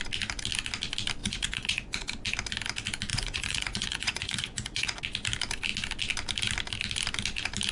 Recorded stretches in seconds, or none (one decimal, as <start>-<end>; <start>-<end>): 0.0-1.2; 2.1-3.1; 5.0-7.7